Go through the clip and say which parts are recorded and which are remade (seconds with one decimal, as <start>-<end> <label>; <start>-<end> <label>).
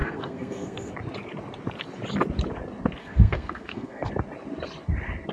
0.0-0.9 remade; 0.9-3.0 recorded; 3.0-4.1 remade; 4.1-5.3 recorded